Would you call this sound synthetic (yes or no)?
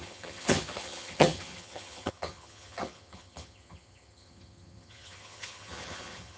yes